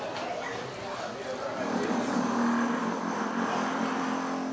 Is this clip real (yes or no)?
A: yes